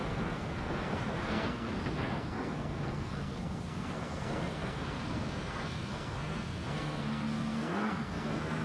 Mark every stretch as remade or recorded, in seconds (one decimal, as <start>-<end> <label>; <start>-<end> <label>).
0.0-8.6 remade